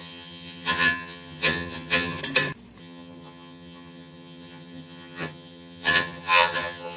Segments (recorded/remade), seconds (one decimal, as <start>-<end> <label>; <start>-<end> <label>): 0.0-2.2 remade; 2.2-2.8 recorded; 2.8-7.0 remade